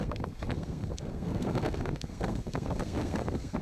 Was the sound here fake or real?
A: fake